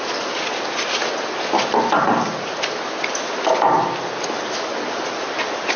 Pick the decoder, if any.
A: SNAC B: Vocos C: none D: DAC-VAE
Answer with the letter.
C